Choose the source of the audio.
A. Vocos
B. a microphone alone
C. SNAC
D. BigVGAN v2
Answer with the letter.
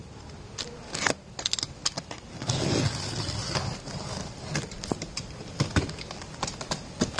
B